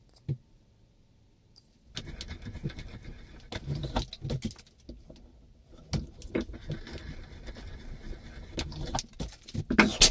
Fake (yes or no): no